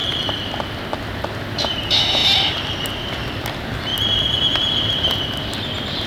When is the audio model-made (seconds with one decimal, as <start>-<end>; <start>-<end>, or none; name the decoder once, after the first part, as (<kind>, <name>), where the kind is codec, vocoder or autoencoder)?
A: none